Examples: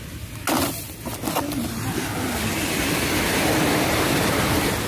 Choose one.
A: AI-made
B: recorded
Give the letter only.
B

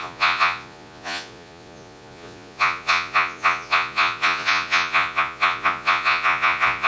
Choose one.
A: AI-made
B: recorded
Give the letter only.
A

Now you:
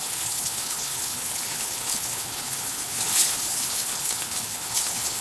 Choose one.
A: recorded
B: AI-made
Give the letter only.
B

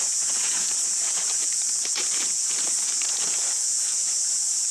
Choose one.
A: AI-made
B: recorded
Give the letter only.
A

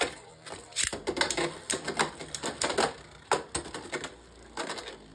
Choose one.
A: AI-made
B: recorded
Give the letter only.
B